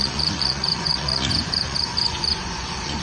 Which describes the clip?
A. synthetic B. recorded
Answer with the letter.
A